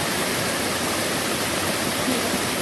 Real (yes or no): no